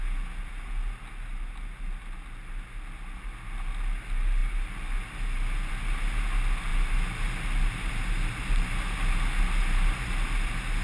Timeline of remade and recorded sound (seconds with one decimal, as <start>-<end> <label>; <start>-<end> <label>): 0.0-10.8 recorded